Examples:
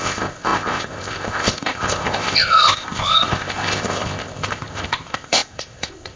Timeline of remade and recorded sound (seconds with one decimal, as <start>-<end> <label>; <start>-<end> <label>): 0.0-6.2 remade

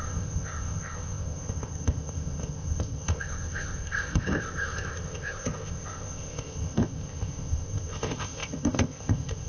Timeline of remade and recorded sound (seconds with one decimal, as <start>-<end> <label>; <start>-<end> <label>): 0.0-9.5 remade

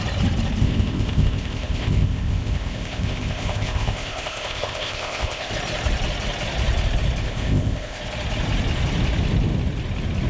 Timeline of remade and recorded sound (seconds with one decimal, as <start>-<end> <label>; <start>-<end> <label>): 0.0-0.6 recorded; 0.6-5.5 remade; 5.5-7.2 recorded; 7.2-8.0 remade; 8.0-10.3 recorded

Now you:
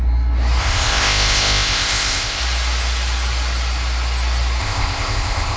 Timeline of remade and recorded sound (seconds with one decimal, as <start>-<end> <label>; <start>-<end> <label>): 0.0-0.6 recorded; 0.6-2.4 remade; 2.4-4.6 recorded; 4.6-5.6 remade

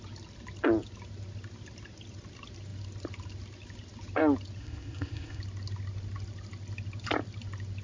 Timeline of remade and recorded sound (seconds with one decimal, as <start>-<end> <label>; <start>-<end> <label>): 0.0-4.6 recorded; 4.6-5.4 remade; 5.4-7.8 recorded